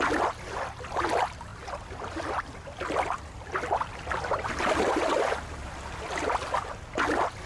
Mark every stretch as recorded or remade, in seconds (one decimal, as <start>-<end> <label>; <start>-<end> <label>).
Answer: 0.0-7.5 recorded